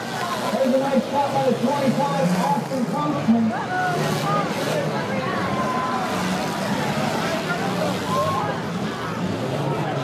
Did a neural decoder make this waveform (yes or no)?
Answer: no